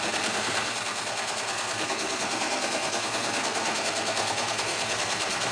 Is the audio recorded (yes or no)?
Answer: no